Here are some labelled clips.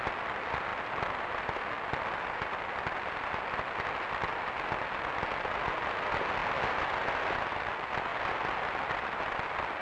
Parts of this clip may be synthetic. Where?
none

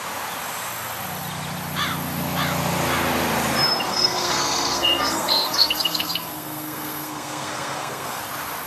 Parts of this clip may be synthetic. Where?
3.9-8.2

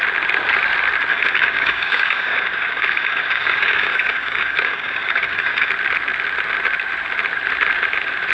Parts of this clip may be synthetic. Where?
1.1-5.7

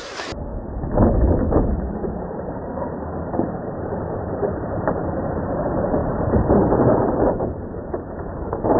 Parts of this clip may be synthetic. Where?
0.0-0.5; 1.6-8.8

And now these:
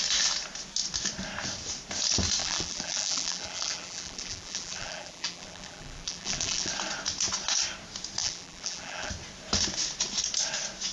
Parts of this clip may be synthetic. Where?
2.4-6.7; 8.2-9.1